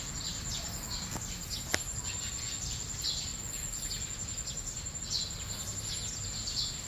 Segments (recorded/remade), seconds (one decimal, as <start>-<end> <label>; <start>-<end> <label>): 0.0-6.9 recorded